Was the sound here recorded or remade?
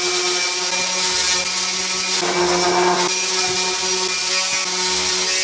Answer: recorded